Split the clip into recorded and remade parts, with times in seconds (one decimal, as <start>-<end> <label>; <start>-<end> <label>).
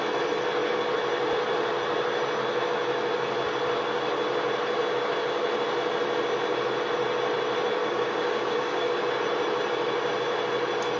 0.0-7.8 recorded; 7.8-9.0 remade; 9.0-11.0 recorded